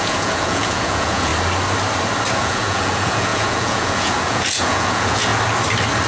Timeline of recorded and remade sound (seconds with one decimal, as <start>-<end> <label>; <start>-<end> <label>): 0.0-1.3 remade; 1.3-2.4 recorded; 2.4-5.3 remade; 5.3-6.1 recorded